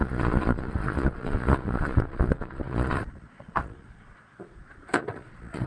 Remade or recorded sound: remade